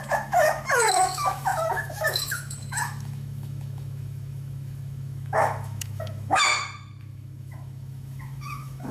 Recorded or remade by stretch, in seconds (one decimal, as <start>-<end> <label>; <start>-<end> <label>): 0.0-6.5 remade; 6.5-7.0 recorded; 7.0-8.9 remade